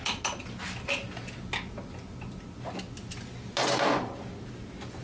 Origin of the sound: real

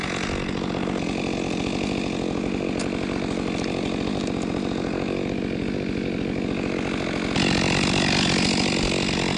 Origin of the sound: real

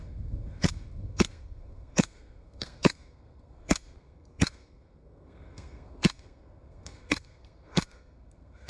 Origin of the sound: fake